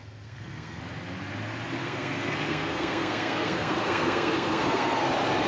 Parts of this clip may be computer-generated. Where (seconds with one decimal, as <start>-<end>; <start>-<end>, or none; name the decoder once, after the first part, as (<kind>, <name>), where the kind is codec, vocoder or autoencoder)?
0.0-0.8 (codec, SNAC); 1.8-5.1